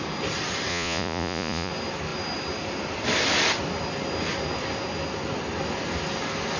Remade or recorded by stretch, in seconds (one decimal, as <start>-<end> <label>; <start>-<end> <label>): 0.0-0.7 recorded; 0.7-1.7 remade; 1.7-6.6 recorded